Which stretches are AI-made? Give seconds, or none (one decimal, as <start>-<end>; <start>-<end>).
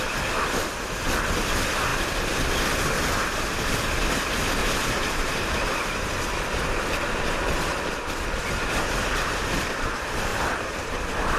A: 4.6-6.1; 10.3-11.4